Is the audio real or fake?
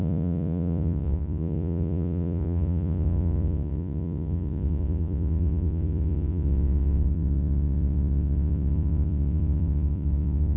fake